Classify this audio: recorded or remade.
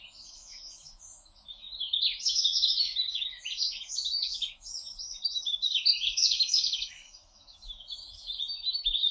remade